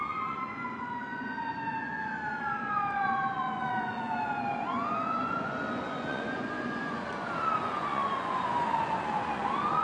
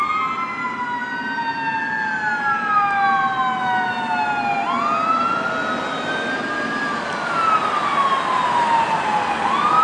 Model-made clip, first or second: first